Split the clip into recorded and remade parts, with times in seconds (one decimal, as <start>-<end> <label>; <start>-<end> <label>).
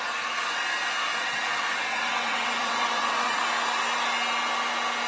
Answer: 0.0-1.1 recorded; 1.1-3.4 remade; 3.4-5.1 recorded